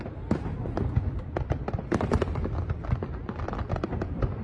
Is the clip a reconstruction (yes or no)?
no